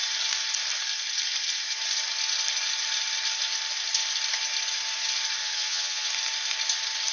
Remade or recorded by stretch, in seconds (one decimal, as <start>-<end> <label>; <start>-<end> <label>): 0.0-5.4 recorded; 5.4-6.1 remade; 6.1-7.1 recorded